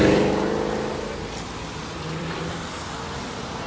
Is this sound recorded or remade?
remade